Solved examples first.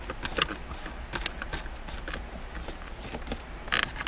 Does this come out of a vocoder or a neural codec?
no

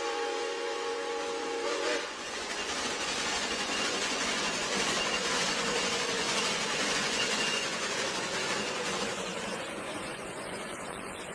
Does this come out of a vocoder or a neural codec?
yes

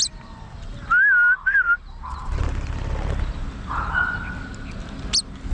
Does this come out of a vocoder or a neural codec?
no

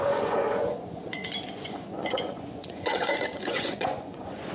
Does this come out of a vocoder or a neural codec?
yes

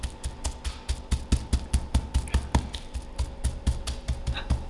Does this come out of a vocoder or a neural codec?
no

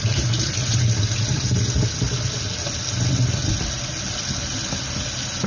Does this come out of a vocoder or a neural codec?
no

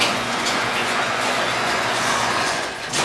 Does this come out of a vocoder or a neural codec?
yes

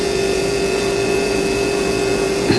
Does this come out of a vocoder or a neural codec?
yes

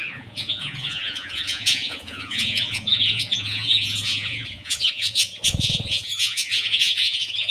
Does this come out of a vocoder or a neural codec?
yes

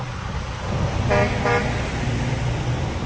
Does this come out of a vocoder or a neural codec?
no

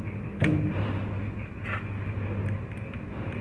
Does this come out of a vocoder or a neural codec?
no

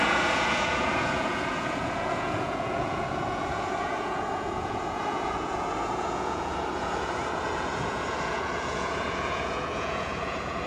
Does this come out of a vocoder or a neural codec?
yes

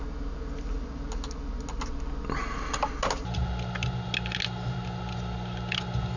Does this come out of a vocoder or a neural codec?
no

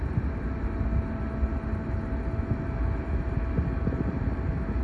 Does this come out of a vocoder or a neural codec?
no